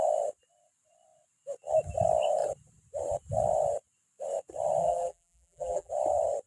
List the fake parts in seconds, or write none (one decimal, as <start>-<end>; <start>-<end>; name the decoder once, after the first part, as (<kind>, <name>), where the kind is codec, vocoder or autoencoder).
4.8-5.9 (vocoder, BigVGAN v2)